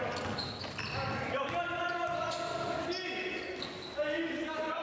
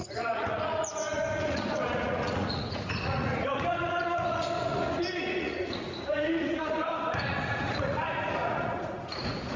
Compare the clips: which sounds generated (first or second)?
second